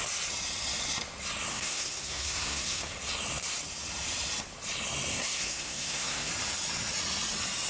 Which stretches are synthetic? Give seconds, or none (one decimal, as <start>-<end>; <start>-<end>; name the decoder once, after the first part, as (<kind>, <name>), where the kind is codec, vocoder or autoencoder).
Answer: 1.5-2.9 (codec, SNAC); 5.1-6.3